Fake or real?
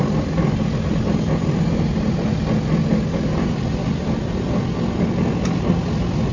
real